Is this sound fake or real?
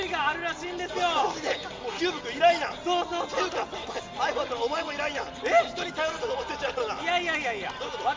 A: real